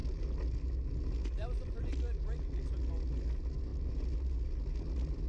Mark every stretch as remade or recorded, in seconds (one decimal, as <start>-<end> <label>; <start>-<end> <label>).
0.0-5.3 recorded